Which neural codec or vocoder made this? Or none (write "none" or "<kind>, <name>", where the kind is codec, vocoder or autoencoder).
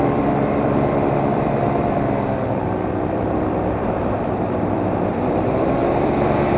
vocoder, BigVGAN v2